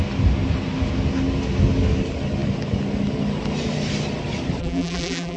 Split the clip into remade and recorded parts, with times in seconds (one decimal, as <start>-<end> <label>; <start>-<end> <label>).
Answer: 0.0-4.6 recorded; 4.6-5.4 remade